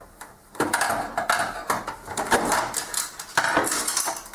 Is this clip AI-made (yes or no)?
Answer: no